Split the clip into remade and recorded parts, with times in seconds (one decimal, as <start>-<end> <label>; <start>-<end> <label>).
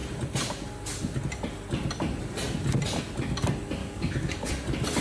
0.0-3.8 recorded; 3.8-4.5 remade; 4.5-5.0 recorded